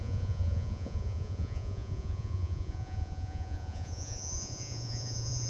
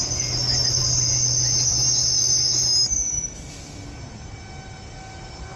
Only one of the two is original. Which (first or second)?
second